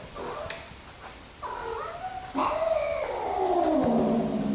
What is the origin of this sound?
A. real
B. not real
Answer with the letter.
A